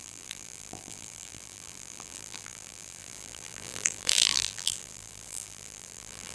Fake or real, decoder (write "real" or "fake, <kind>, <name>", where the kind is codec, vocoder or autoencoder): fake, vocoder, BigVGAN v2